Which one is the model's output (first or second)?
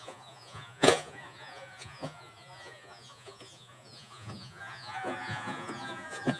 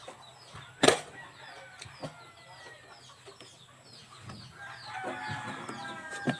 first